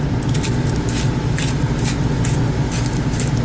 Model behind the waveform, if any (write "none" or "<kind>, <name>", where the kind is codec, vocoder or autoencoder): none